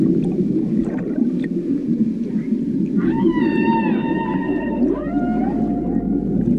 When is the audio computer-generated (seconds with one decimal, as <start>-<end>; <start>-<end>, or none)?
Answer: none